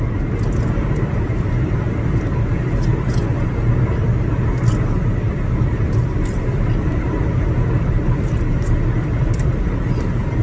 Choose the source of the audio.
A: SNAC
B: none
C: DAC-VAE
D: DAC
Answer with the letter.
B